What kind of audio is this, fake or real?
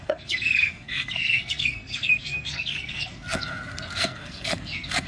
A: fake